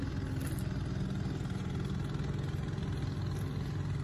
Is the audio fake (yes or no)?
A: no